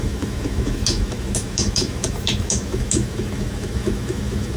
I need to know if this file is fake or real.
fake